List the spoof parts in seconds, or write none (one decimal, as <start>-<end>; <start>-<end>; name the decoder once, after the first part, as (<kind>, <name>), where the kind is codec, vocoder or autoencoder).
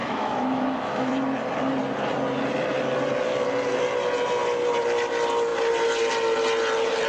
0.0-1.1 (autoencoder, DAC-VAE)